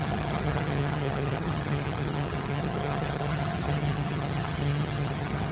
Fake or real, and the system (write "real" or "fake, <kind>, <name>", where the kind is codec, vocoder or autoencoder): fake, vocoder, HiFi-GAN